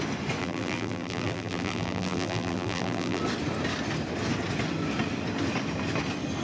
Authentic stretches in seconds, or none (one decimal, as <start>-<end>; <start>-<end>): 0.0-0.4; 3.2-6.4